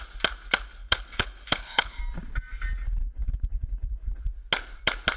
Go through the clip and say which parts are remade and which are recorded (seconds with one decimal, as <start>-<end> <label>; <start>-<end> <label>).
0.0-0.8 recorded; 0.8-2.0 remade; 2.0-3.0 recorded; 3.0-4.2 remade; 4.2-5.2 recorded